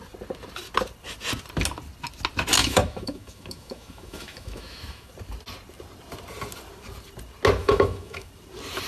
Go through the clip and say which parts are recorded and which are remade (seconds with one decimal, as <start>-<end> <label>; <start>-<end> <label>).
0.0-2.6 recorded; 2.6-5.1 remade; 5.1-7.6 recorded; 7.6-8.3 remade; 8.3-8.9 recorded